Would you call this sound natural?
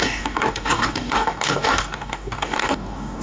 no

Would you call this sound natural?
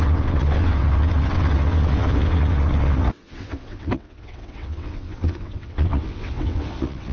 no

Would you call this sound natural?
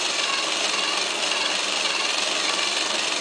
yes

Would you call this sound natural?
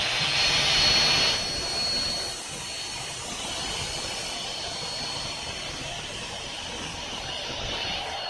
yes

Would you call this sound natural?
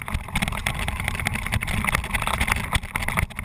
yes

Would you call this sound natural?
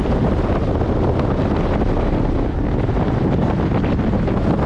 yes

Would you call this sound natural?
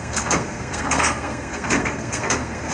no